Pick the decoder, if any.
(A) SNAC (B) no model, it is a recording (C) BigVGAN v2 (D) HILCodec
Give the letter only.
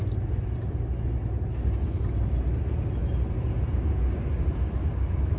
B